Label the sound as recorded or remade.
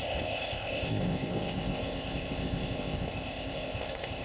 remade